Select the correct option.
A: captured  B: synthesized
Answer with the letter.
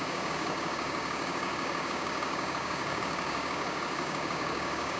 B